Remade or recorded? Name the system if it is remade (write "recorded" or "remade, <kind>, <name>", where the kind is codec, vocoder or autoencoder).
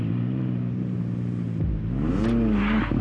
recorded